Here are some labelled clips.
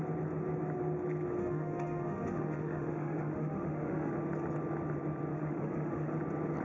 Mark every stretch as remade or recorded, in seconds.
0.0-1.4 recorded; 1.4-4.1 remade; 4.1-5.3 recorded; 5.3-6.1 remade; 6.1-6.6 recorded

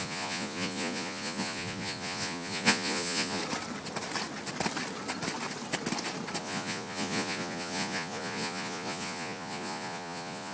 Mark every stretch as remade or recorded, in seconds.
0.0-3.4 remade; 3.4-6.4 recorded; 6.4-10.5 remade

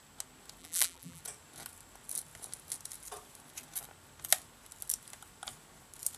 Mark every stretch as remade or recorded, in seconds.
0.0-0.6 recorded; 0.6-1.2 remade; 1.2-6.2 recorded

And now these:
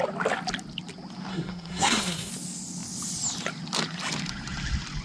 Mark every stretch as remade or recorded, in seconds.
0.0-1.3 recorded; 1.3-2.3 remade; 2.3-5.0 recorded